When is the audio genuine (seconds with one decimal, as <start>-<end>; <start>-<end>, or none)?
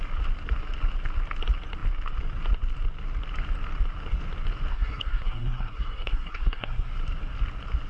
0.0-4.7; 6.9-7.9